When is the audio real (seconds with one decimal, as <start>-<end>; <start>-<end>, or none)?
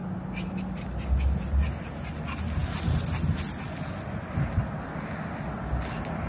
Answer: 0.0-6.3